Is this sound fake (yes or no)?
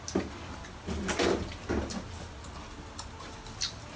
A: no